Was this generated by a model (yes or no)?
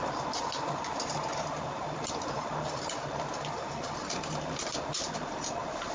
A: no